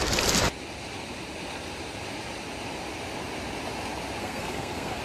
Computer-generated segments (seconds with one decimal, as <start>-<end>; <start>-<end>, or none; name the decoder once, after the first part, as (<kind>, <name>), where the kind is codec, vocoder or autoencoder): 4.2-5.0 (codec, SNAC)